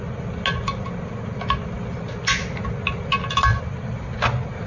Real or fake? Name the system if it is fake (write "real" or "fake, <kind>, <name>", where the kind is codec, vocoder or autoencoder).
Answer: real